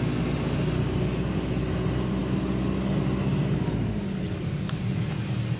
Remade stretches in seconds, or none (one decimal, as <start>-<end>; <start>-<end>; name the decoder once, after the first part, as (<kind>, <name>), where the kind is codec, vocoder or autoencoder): none